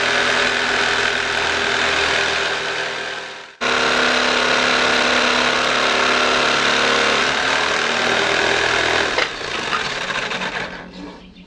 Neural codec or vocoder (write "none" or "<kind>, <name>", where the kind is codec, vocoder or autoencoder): none